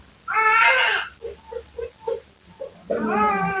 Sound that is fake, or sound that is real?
real